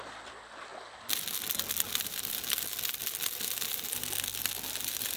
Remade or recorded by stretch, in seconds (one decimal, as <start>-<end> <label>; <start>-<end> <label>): 0.0-5.2 recorded

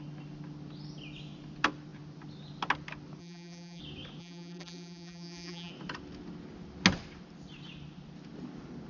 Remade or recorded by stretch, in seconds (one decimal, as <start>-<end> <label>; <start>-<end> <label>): 0.0-3.2 recorded; 3.2-3.8 remade; 3.8-4.2 recorded; 4.2-5.7 remade; 5.7-8.9 recorded

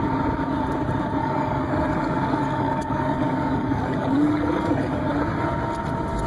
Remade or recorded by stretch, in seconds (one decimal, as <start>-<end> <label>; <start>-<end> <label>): 0.0-1.2 recorded; 1.2-5.0 remade; 5.0-6.3 recorded

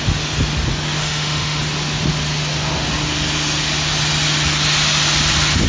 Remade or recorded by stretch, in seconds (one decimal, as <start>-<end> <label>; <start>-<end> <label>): 0.0-1.0 recorded; 1.0-1.6 remade; 1.6-5.7 recorded

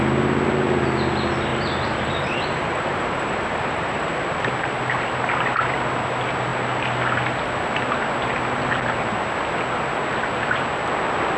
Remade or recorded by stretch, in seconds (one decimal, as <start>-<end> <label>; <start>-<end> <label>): 0.0-1.5 recorded; 1.5-4.1 remade; 4.1-11.4 recorded

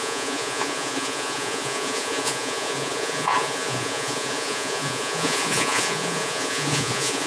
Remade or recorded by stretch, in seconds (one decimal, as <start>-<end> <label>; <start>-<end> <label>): 0.0-7.3 remade